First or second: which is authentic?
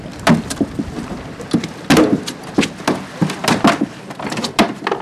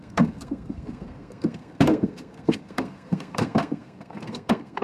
first